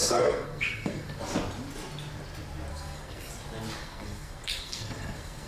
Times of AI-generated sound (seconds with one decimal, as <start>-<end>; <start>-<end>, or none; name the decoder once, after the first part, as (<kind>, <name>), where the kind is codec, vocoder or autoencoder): 0.0-1.2 (codec, SNAC); 2.7-3.3; 3.8-5.5